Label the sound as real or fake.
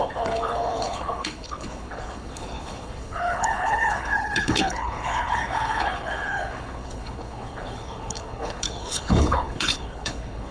fake